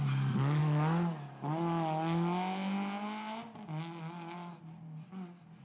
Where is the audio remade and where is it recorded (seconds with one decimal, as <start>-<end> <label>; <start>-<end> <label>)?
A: 0.0-5.6 recorded